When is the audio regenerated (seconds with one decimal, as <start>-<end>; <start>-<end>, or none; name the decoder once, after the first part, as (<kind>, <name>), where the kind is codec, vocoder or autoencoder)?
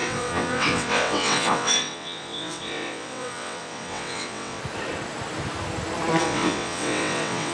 0.0-4.6 (vocoder, WaveNeXt); 6.2-7.5